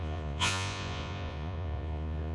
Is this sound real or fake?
fake